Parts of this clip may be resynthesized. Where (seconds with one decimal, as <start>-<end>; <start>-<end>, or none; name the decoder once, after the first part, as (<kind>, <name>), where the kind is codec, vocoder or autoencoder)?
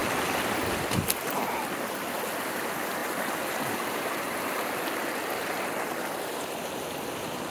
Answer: none